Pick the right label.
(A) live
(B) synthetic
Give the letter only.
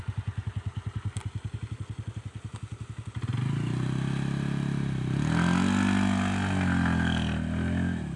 A